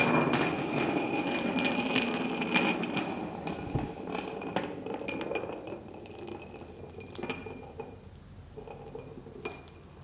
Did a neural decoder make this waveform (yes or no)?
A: no